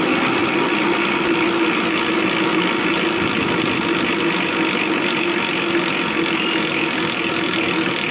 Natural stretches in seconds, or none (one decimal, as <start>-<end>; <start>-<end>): 0.0-8.1